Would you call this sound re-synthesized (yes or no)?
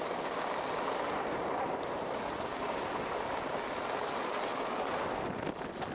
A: no